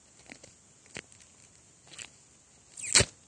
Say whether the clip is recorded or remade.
recorded